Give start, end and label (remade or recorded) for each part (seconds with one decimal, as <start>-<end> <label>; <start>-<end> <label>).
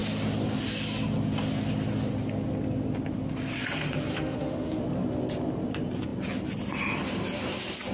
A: 0.0-4.1 recorded; 4.1-4.8 remade; 4.8-7.9 recorded